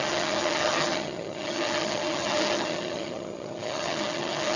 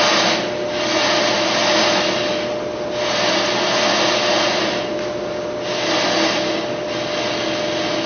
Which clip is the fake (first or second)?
first